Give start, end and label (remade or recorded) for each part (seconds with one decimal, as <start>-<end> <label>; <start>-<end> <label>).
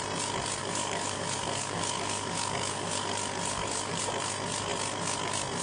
0.0-0.6 recorded; 0.6-4.0 remade; 4.0-5.6 recorded